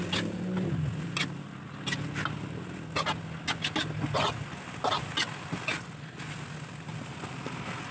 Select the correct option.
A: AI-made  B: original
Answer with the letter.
B